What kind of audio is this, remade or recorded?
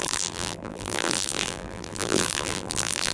remade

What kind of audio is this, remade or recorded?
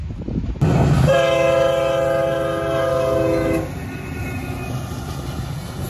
recorded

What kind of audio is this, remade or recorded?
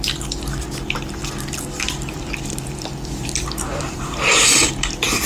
remade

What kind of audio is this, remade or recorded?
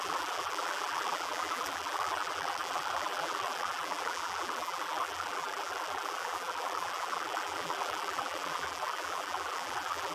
remade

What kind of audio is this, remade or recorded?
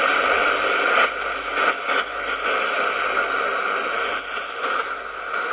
recorded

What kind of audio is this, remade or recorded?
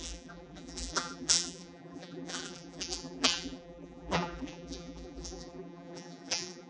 remade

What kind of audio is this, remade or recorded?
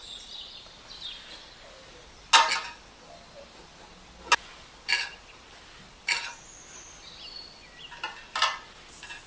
recorded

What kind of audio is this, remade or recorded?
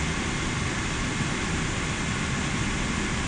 recorded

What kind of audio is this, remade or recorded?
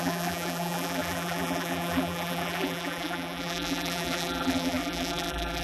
remade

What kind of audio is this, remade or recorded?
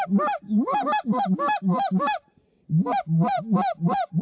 remade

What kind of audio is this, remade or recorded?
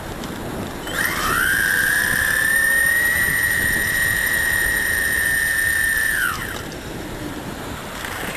remade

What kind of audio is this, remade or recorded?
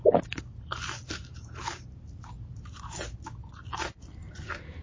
remade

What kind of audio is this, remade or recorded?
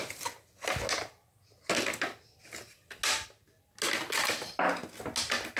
recorded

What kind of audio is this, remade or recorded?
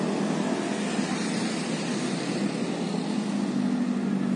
recorded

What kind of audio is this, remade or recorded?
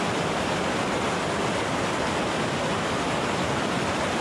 recorded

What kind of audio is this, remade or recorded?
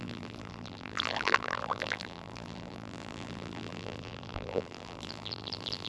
remade